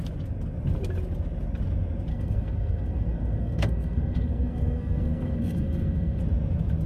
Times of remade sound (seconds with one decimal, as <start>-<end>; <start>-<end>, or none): 2.1-6.2